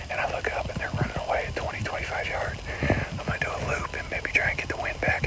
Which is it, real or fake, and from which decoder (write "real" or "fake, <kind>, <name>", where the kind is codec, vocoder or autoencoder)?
real